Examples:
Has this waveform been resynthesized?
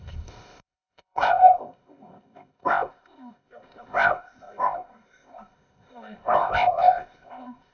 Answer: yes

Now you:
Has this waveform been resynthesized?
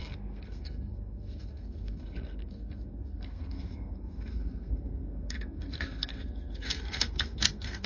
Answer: yes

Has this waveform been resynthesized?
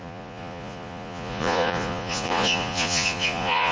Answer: yes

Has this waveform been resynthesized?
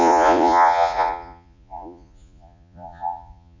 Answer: yes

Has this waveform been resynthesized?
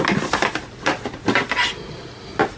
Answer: no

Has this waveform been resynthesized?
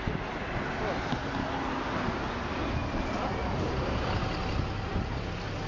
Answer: no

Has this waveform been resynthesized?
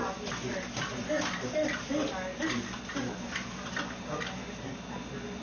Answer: no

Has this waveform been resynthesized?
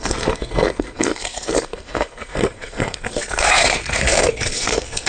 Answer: yes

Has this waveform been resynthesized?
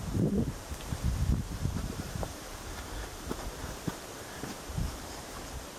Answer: yes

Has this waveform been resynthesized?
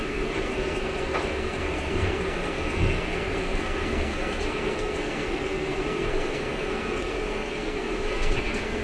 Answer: yes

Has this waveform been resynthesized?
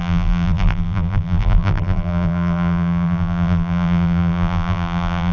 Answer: yes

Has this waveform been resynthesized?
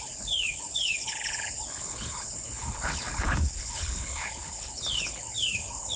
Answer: yes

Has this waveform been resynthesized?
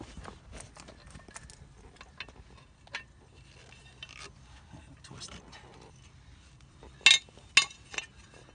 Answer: no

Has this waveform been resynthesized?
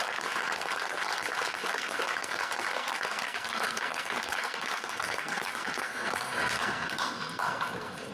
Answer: yes